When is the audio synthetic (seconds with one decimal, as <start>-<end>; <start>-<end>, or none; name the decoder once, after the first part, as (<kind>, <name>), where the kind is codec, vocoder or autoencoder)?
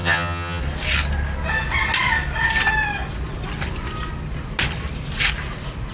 0.0-0.6 (vocoder, HiFi-GAN)